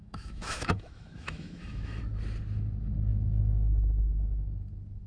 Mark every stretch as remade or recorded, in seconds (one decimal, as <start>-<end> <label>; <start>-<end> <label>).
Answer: 0.0-2.0 remade; 2.0-3.1 recorded; 3.1-4.0 remade; 4.0-5.1 recorded